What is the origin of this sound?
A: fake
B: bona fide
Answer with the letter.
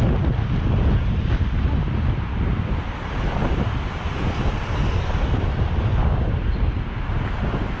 B